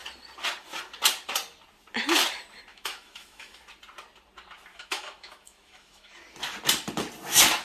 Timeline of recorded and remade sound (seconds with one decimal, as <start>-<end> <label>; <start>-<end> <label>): 0.0-2.7 recorded; 2.7-3.7 remade; 3.7-4.7 recorded; 4.7-6.1 remade; 6.1-7.6 recorded

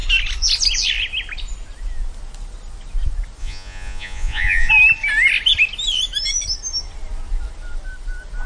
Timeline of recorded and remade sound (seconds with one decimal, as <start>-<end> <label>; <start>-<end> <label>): 0.0-3.4 recorded; 3.4-4.7 remade; 4.7-8.5 recorded

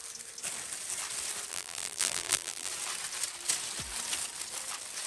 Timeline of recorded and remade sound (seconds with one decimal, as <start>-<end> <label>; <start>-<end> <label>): 0.0-1.5 recorded; 1.5-2.7 remade; 2.7-5.1 recorded

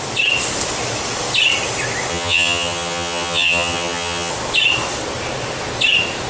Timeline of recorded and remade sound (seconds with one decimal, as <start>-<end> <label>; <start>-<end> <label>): 0.0-2.1 recorded; 2.1-4.3 remade; 4.3-6.3 recorded

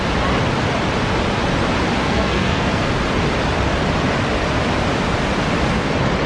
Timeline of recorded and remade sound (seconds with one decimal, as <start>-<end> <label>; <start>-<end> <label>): 0.0-2.0 recorded; 2.0-2.9 remade; 2.9-6.3 recorded